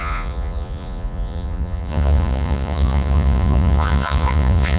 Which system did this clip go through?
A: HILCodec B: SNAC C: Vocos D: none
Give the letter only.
C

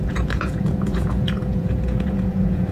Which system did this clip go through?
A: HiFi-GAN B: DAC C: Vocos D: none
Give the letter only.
C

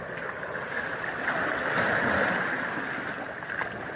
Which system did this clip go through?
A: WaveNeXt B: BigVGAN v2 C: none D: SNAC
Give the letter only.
C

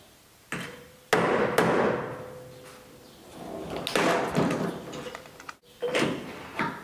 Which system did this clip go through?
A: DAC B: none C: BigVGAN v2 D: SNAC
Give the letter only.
B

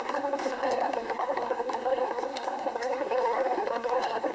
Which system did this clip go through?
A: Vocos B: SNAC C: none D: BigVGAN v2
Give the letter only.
B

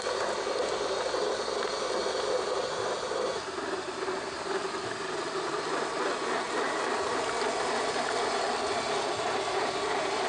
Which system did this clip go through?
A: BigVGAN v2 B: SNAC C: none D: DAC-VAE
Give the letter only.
C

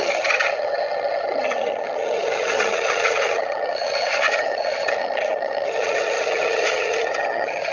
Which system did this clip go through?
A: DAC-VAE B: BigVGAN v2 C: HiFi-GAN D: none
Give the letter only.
C